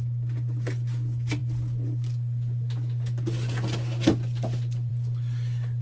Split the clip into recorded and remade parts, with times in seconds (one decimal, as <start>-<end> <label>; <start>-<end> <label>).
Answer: 0.0-5.8 recorded